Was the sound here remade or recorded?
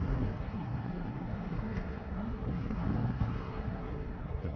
remade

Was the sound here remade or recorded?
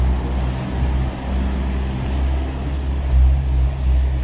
recorded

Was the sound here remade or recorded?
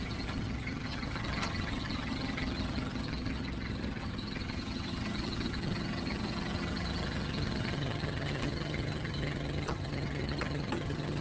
remade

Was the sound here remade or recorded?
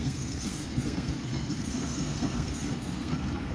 remade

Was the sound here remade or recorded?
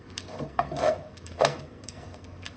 remade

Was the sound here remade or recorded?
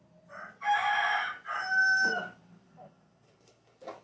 recorded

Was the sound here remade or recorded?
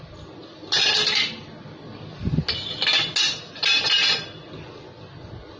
recorded